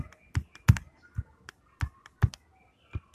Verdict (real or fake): real